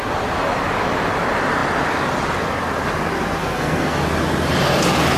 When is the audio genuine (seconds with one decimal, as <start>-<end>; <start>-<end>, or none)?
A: 0.0-3.4; 4.0-5.2